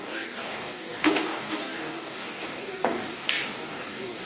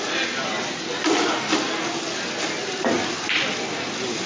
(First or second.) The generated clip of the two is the first